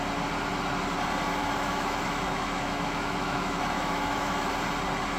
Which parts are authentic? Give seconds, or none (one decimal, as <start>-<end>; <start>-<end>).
0.0-1.4; 4.5-5.2